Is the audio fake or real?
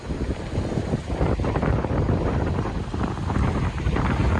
fake